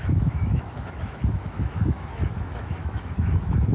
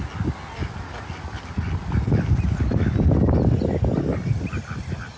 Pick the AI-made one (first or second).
first